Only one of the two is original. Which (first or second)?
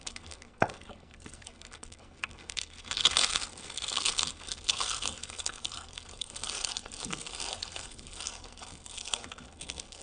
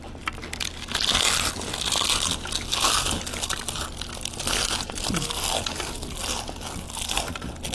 second